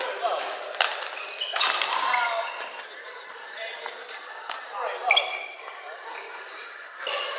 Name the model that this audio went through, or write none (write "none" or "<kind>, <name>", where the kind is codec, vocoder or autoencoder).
none